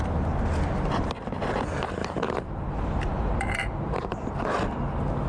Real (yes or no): yes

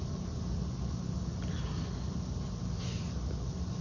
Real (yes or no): yes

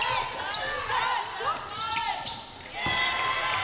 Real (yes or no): yes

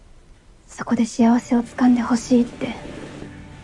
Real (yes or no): yes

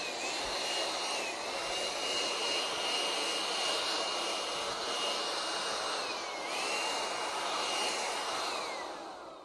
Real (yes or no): yes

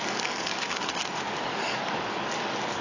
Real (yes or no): no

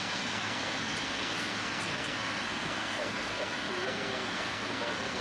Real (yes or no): no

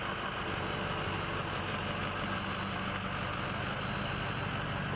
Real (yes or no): yes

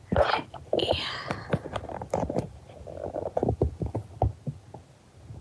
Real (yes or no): yes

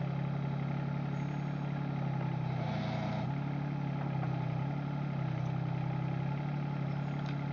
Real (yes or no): yes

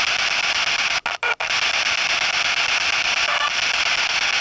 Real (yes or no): yes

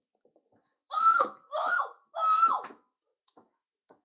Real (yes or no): no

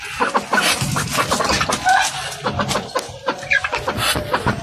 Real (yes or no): yes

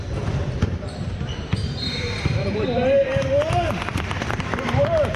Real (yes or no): no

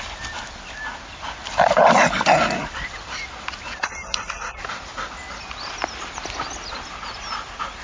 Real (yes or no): yes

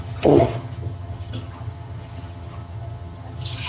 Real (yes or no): no